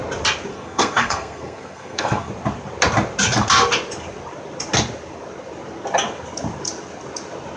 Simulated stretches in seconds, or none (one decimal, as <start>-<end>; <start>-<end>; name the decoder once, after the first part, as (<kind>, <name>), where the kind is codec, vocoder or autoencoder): 0.5-2.3 (codec, SNAC)